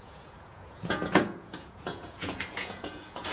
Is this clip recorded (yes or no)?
no